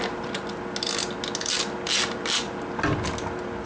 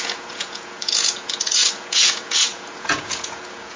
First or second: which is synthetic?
second